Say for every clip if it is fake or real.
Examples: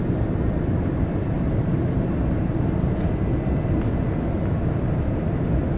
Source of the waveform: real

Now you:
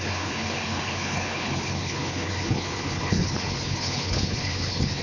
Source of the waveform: fake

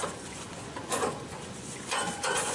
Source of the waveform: fake